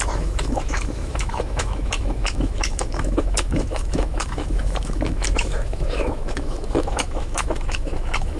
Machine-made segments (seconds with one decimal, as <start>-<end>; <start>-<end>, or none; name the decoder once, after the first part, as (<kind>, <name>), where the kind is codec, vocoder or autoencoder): 0.0-8.4 (autoencoder, DAC-VAE)